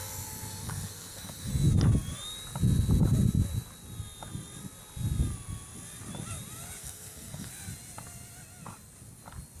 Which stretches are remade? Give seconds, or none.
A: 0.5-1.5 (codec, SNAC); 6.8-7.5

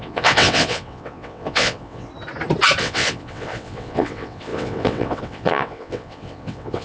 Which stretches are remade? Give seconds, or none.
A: 0.0-2.1 (vocoder, WaveNeXt); 2.8-6.8

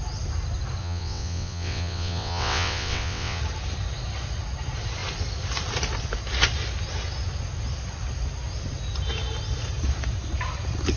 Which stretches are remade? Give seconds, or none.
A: 0.8-3.4 (vocoder, WaveNeXt)

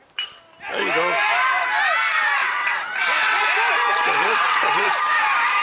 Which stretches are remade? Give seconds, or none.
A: 2.4-3.4 (vocoder, WaveNeXt); 4.2-5.0

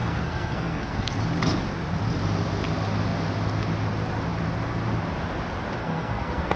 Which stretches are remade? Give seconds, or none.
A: 0.0-1.2 (codec, SNAC); 5.8-6.6

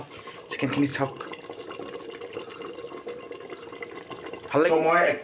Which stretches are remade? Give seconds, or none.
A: none

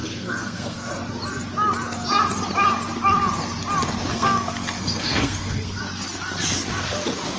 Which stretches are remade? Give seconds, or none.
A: 0.0-0.9 (codec, SNAC); 4.1-5.8

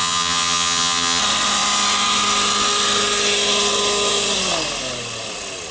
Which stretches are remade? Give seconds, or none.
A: 0.0-1.2 (vocoder, HiFi-GAN)